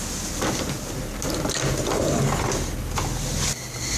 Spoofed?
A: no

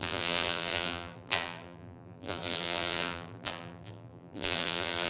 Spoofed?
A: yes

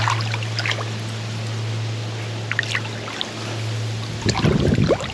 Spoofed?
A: no